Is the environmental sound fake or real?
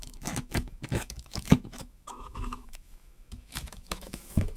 fake